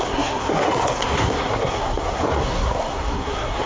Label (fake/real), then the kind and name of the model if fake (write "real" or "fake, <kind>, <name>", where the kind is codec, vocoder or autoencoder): fake, codec, SNAC